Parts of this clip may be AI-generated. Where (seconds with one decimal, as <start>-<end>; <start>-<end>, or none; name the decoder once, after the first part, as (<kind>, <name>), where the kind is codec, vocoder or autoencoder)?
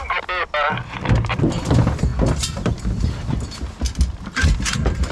none